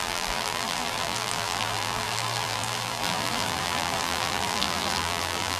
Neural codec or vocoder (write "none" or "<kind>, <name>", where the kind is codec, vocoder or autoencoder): vocoder, BigVGAN v2